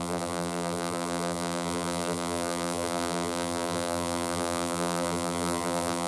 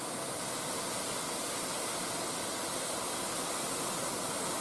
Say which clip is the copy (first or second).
first